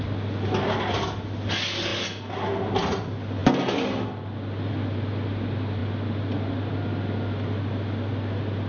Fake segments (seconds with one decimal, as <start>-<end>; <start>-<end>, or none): none